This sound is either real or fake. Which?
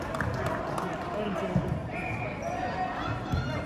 real